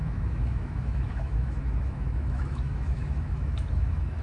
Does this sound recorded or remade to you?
remade